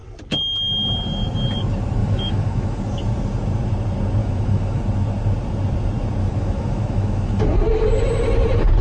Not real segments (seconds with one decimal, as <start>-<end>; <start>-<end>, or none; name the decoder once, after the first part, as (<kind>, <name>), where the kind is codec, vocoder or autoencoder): 2.0-2.8 (autoencoder, DAC-VAE); 4.2-4.8; 6.2-7.4